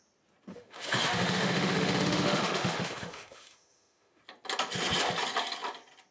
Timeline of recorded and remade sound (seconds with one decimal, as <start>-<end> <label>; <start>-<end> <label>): 0.0-0.5 recorded; 0.5-4.2 remade; 4.2-6.1 recorded